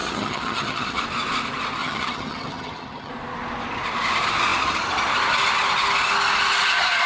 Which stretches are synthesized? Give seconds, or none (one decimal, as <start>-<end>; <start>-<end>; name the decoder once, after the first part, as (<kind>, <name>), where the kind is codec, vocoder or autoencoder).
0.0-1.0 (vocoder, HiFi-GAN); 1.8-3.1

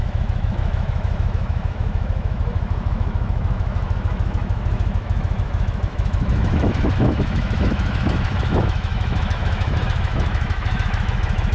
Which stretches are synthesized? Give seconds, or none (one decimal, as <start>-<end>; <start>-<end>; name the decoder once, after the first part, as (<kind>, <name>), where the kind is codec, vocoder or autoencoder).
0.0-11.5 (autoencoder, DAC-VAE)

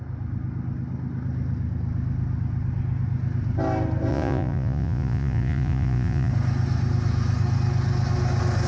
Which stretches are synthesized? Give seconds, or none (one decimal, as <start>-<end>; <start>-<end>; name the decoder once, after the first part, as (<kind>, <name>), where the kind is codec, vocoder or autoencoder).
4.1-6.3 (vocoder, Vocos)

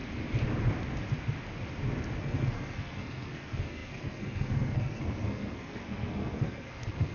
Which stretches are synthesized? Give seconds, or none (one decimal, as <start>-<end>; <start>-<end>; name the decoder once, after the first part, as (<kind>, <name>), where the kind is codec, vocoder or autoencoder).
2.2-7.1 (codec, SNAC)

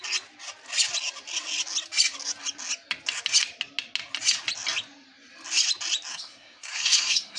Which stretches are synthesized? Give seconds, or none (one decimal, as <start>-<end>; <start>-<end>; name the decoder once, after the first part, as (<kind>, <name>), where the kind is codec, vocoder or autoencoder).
6.1-7.4 (codec, SNAC)

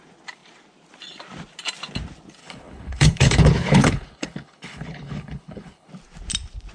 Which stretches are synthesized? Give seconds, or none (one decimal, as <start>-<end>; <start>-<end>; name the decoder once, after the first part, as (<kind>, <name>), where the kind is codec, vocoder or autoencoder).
2.4-5.9 (codec, HILCodec)

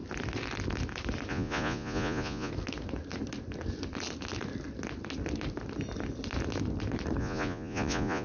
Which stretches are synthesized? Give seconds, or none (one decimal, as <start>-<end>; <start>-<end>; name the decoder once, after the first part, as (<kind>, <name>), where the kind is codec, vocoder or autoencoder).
1.3-2.5 (vocoder, Vocos); 7.2-8.2

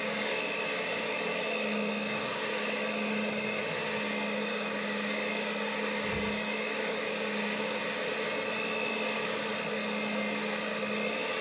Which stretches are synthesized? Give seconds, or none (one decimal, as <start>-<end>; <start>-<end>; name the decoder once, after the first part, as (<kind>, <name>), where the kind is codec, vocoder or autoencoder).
0.0-3.6 (codec, DAC); 4.4-7.8; 8.9-9.5